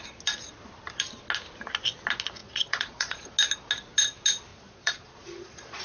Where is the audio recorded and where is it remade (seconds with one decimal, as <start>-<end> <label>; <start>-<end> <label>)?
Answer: 0.0-2.4 recorded; 2.4-3.3 remade; 3.3-4.5 recorded; 4.5-5.8 remade